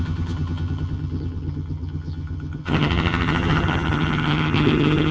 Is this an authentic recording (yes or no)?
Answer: no